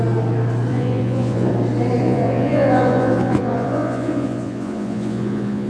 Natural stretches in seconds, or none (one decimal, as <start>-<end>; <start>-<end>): 0.0-0.7; 1.5-2.0